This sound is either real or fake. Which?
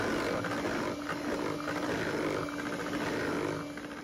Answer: real